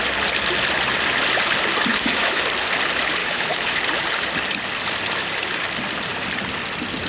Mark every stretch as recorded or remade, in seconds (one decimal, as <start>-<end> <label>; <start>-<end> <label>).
0.0-1.9 recorded; 1.9-2.4 remade; 2.4-3.2 recorded; 3.2-3.8 remade; 3.8-7.1 recorded